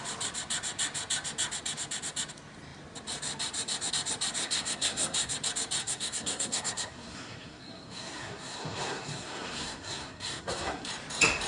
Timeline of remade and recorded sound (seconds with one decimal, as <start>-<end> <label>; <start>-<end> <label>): 0.0-4.4 recorded; 4.4-5.3 remade; 5.3-5.8 recorded; 5.8-10.9 remade; 10.9-11.5 recorded